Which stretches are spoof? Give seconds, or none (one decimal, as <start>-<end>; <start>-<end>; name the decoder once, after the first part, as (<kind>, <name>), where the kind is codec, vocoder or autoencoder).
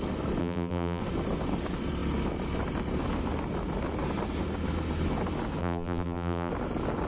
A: 0.4-1.0 (vocoder, BigVGAN v2); 5.6-6.5